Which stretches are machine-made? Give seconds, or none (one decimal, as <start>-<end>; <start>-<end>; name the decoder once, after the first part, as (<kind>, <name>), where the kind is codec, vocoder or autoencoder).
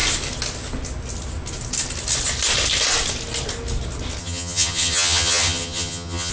4.2-6.3 (vocoder, HiFi-GAN)